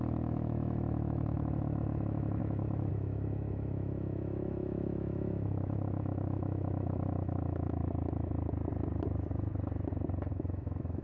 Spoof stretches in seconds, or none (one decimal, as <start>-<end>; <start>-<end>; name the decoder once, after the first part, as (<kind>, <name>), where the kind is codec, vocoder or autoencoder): 0.0-7.8 (autoencoder, DAC-VAE); 10.3-11.0

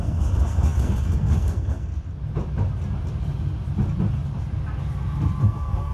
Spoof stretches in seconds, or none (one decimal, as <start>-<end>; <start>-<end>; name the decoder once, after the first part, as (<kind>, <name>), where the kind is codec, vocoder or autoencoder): 0.0-1.9 (codec, SNAC); 5.4-5.9

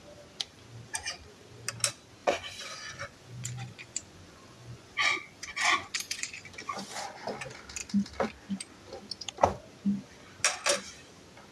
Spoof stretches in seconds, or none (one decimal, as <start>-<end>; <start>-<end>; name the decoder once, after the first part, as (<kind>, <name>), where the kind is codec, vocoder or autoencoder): 2.2-6.4 (vocoder, Vocos)